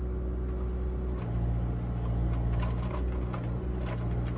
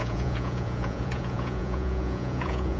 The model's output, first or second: second